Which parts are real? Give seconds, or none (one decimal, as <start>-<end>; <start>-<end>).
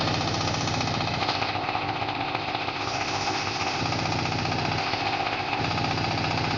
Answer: 0.0-1.2; 3.8-4.8; 5.6-6.6